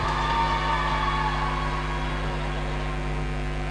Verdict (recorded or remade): recorded